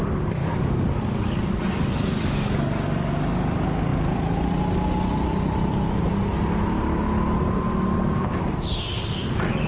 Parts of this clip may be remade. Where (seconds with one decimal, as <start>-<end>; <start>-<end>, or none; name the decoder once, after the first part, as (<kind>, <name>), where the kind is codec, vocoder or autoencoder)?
0.4-3.5 (codec, DAC)

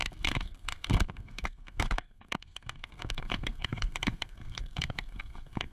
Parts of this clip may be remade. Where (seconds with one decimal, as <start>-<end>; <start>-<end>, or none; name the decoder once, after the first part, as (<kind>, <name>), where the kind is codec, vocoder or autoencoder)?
0.0-5.7 (codec, SNAC)

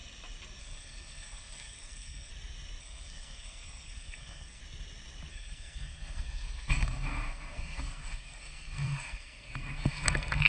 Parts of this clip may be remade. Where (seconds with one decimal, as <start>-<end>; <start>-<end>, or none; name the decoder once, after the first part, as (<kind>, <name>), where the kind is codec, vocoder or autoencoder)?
0.6-2.3 (codec, SNAC); 2.8-4.6; 5.3-10.5